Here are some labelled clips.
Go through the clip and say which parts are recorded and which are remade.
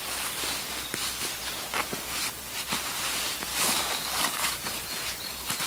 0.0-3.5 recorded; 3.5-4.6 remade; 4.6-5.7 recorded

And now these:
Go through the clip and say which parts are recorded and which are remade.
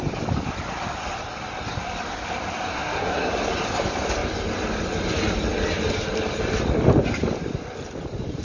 0.0-2.7 recorded; 2.7-3.3 remade; 3.3-8.4 recorded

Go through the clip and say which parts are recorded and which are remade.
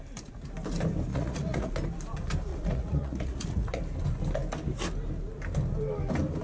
0.0-1.1 recorded; 1.1-1.7 remade; 1.7-2.5 recorded; 2.5-3.8 remade; 3.8-6.4 recorded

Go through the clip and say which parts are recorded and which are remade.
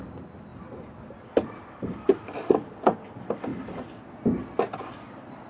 0.0-2.1 recorded; 2.1-2.9 remade; 2.9-3.5 recorded; 3.5-4.4 remade; 4.4-5.5 recorded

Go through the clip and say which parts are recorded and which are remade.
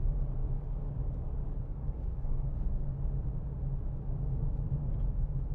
0.0-0.4 recorded; 0.4-2.9 remade; 2.9-5.5 recorded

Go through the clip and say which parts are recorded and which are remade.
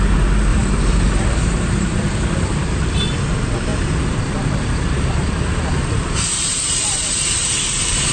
0.0-0.5 recorded; 0.5-3.0 remade; 3.0-3.7 recorded; 3.7-8.1 remade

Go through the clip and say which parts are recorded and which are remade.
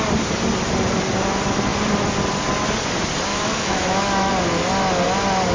0.0-3.3 recorded; 3.3-4.3 remade; 4.3-5.5 recorded